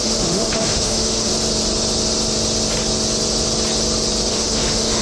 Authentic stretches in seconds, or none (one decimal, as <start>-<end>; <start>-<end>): 1.3-4.3